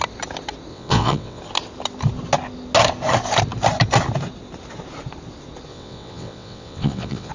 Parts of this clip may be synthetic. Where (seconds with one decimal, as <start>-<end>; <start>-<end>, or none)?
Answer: 0.7-1.4; 5.7-7.3

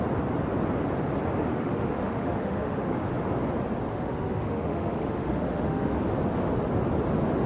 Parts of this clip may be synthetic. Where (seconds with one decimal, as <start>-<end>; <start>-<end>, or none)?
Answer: 1.5-3.1; 3.9-6.0

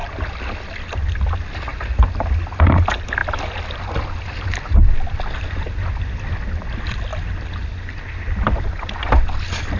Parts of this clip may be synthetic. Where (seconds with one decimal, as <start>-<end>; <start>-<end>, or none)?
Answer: 0.0-0.5

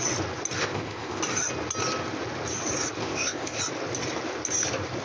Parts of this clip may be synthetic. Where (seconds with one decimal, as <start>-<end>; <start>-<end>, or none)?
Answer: 0.6-1.2; 3.0-3.6

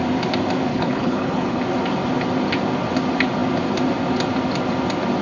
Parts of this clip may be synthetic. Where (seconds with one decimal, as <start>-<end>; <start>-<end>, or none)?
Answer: 0.7-1.6

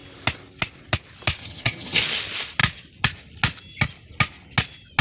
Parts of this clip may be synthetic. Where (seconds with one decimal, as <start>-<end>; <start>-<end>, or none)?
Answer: 1.4-2.0

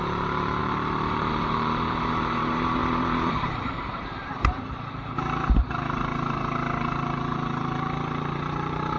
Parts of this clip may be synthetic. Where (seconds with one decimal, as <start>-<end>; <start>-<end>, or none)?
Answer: 0.0-6.1; 6.8-9.0